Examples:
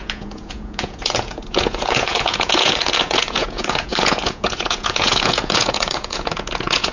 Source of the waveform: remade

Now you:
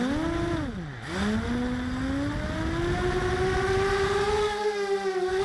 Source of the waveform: recorded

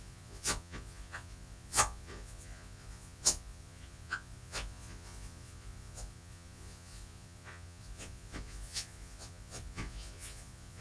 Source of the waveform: remade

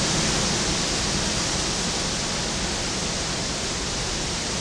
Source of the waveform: recorded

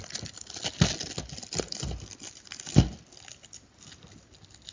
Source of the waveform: recorded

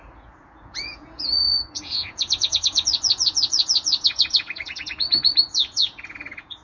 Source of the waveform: remade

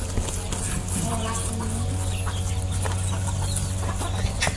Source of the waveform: recorded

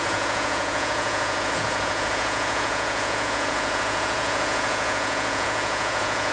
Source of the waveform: remade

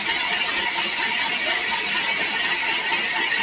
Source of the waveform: recorded